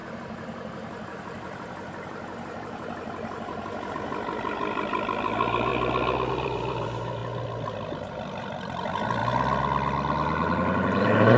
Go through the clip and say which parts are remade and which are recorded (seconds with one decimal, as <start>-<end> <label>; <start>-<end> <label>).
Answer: 0.0-5.7 remade; 5.7-6.3 recorded; 6.3-7.2 remade; 7.2-7.9 recorded; 7.9-9.2 remade; 9.2-11.0 recorded; 11.0-11.4 remade

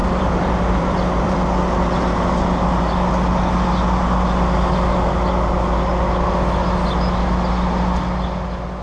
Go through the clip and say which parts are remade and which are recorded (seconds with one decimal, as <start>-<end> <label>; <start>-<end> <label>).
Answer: 0.0-1.4 remade; 1.4-8.8 recorded

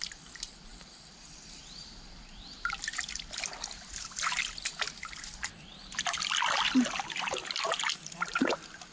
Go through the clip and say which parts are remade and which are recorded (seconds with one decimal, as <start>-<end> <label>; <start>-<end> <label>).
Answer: 0.0-8.9 recorded

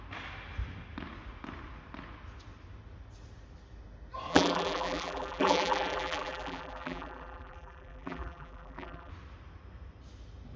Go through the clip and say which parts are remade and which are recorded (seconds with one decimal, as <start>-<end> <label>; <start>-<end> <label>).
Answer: 0.0-4.3 recorded; 4.3-9.1 remade; 9.1-10.6 recorded

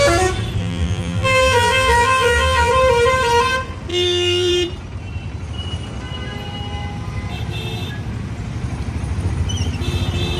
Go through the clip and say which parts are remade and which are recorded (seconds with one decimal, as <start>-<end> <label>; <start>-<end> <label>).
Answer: 0.0-0.6 recorded; 0.6-2.7 remade; 2.7-3.9 recorded; 3.9-4.5 remade; 4.5-10.4 recorded

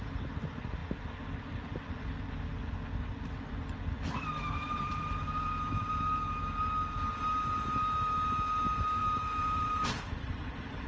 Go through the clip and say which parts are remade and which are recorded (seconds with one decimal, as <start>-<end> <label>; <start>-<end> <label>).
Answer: 0.0-0.8 recorded; 0.8-5.9 remade; 5.9-9.0 recorded; 9.0-10.9 remade

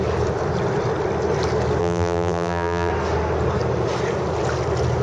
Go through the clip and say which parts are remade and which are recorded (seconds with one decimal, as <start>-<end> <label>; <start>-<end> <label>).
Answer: 0.0-1.8 recorded; 1.8-2.9 remade; 2.9-5.0 recorded

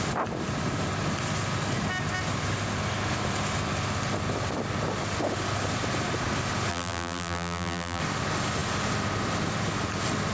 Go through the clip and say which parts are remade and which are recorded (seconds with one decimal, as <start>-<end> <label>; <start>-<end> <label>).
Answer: 0.0-6.7 recorded; 6.7-8.0 remade; 8.0-10.3 recorded